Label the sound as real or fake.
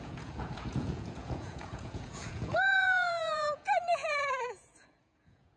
fake